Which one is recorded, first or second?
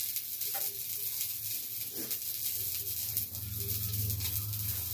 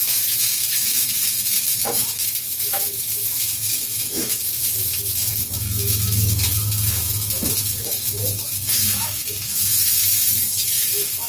first